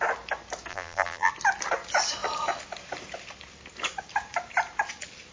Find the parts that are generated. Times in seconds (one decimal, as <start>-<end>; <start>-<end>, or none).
0.7-1.3